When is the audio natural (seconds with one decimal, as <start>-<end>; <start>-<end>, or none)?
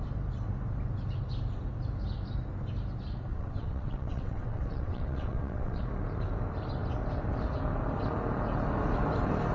0.0-3.3; 5.8-9.5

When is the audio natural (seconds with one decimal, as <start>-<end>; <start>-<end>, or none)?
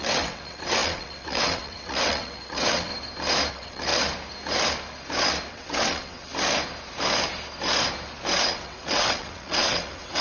2.9-3.5; 3.9-5.5; 6.3-8.4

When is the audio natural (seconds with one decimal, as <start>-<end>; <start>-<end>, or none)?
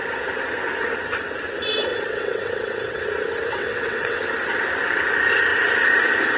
0.0-1.9; 3.1-3.5; 4.2-6.4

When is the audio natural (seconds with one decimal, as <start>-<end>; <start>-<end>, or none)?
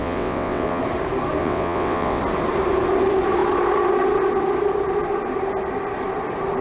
0.8-1.4; 2.2-6.6